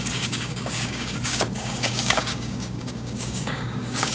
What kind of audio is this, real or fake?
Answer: fake